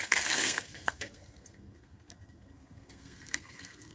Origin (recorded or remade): remade